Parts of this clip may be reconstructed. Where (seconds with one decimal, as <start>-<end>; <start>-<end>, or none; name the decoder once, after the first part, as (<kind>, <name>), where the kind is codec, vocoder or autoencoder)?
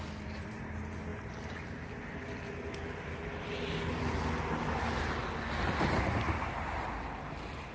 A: 0.0-1.1 (vocoder, BigVGAN v2); 4.8-5.2; 6.8-7.7